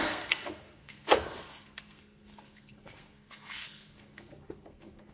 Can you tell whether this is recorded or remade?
remade